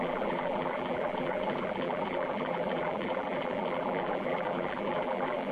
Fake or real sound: fake